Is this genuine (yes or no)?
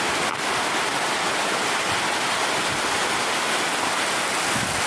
yes